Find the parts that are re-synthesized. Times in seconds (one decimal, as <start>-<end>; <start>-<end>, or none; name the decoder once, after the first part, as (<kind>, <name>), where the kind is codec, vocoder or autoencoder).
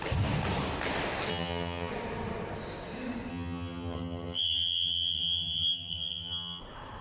1.3-1.9 (vocoder, HiFi-GAN); 3.3-6.6